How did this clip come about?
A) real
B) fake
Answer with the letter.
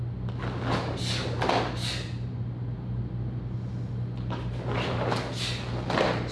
A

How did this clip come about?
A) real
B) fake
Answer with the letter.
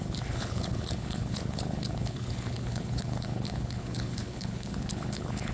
B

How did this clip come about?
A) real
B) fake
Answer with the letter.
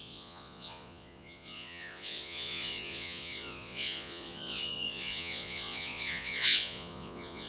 B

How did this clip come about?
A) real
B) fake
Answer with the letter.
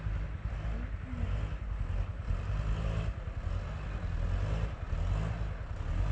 A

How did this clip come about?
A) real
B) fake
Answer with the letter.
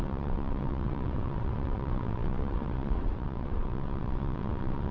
B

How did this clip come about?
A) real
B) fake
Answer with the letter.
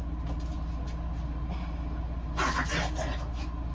A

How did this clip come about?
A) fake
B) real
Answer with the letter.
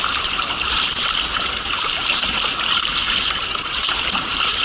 A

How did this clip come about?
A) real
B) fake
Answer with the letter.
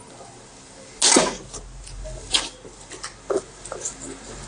A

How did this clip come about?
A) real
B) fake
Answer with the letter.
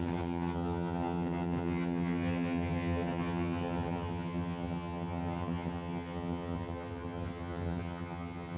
B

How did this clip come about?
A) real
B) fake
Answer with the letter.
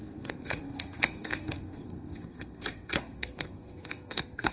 B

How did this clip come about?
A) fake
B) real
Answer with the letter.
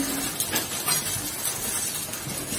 B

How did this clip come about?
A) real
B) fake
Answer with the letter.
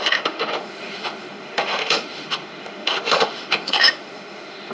B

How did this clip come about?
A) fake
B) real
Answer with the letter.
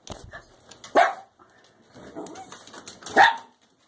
B